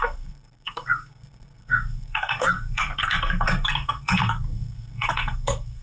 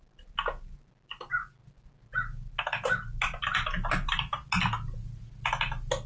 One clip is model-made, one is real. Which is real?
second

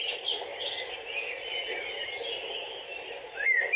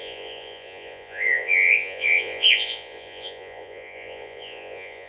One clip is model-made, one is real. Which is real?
first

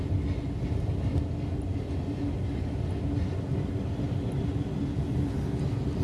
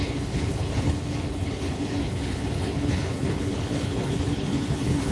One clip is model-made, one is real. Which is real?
first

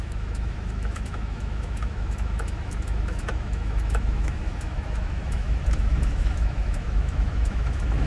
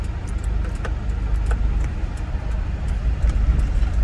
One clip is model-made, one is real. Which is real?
second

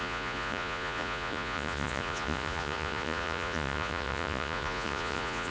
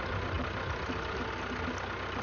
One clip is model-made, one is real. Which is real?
second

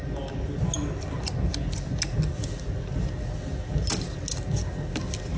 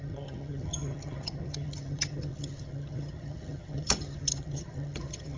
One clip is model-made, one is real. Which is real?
first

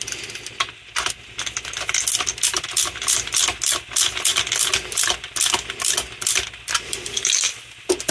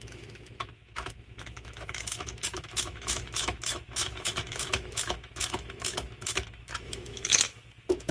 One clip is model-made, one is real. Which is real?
first